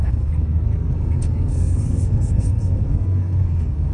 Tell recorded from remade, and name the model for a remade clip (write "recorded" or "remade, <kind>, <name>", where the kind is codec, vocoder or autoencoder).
remade, codec, SNAC